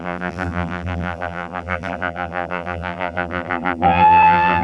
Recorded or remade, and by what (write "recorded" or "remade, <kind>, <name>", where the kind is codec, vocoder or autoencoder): remade, vocoder, BigVGAN v2